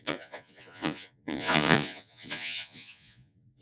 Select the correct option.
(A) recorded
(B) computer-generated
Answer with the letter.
B